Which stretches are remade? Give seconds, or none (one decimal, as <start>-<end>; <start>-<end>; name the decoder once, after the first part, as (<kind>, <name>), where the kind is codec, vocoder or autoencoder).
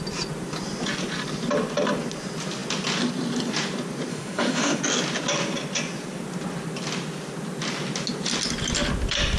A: 4.1-4.8 (autoencoder, DAC-VAE)